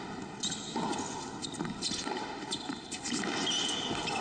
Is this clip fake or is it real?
real